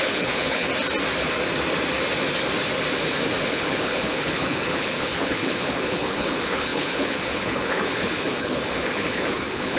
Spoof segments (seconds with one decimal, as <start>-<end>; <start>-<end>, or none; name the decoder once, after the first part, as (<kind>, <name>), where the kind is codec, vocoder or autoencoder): 0.0-0.7 (codec, HILCodec); 3.4-9.8